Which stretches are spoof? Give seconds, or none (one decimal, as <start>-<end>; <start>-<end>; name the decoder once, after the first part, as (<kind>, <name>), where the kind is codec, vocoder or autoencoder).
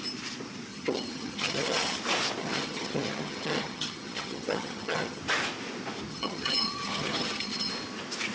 0.7-2.0 (vocoder, HiFi-GAN); 2.4-5.2; 6.1-7.7